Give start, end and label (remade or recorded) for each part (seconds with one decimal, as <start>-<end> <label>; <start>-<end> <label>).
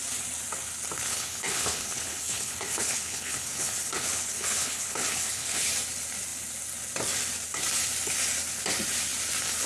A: 0.0-1.1 recorded; 1.1-5.7 remade; 5.7-9.7 recorded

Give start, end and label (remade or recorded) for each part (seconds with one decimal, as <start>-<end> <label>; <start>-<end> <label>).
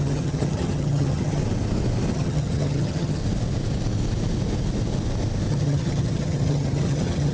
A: 0.0-1.4 remade; 1.4-2.1 recorded; 2.1-3.2 remade; 3.2-5.5 recorded; 5.5-7.3 remade